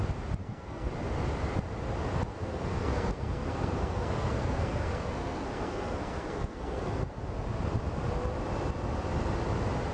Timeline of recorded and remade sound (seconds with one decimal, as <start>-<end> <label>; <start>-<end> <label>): 0.0-0.4 recorded; 0.4-0.9 remade; 0.9-2.3 recorded; 2.3-7.2 remade; 7.2-9.9 recorded